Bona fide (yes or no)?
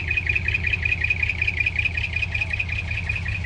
yes